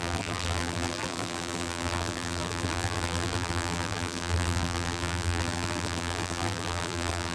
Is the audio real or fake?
fake